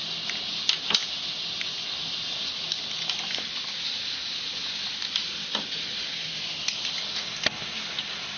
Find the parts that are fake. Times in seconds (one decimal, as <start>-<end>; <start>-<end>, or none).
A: 1.0-2.2; 6.2-7.1